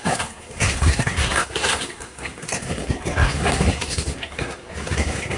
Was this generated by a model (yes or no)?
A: yes